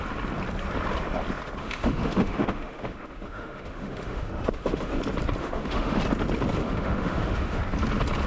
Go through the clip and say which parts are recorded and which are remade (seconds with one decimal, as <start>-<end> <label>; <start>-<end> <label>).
0.0-1.6 recorded; 1.6-5.0 remade; 5.0-5.4 recorded; 5.4-6.0 remade; 6.0-6.6 recorded; 6.6-7.6 remade; 7.6-8.3 recorded

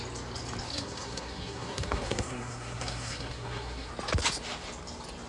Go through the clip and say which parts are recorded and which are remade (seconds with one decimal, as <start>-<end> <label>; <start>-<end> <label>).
0.0-0.7 recorded; 0.7-3.9 remade; 3.9-5.3 recorded

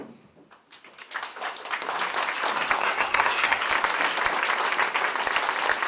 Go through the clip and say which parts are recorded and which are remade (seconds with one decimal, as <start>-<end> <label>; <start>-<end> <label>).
0.0-2.8 recorded; 2.8-3.6 remade; 3.6-5.9 recorded

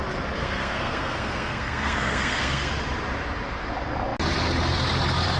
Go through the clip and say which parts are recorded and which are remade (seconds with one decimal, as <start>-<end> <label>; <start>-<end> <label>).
0.0-0.4 recorded; 0.4-2.7 remade; 2.7-5.4 recorded

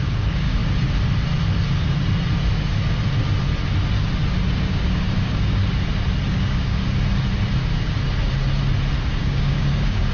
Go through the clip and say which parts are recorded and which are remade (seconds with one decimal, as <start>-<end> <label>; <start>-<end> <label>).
0.0-0.6 remade; 0.6-4.7 recorded; 4.7-5.6 remade; 5.6-6.3 recorded; 6.3-6.8 remade; 6.8-9.0 recorded; 9.0-10.1 remade